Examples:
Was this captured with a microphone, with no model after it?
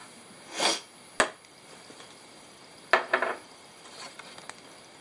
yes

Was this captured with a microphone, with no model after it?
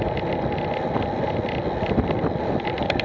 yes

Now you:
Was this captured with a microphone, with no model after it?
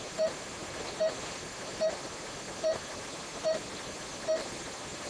yes